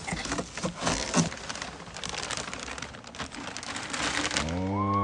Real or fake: real